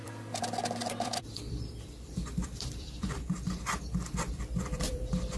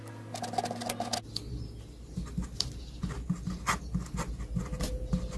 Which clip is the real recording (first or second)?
second